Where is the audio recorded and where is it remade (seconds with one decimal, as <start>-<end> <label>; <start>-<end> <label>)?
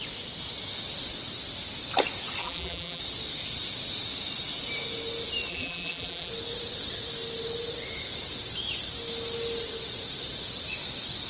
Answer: 0.0-2.4 recorded; 2.4-3.0 remade; 3.0-5.5 recorded; 5.5-6.3 remade; 6.3-11.3 recorded